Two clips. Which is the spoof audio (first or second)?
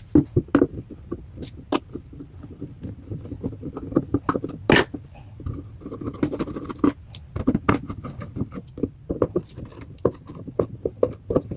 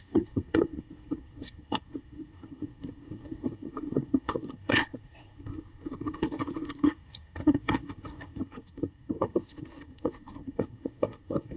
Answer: second